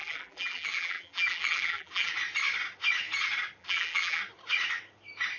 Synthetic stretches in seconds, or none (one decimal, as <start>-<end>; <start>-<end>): 0.0-2.1; 3.6-4.2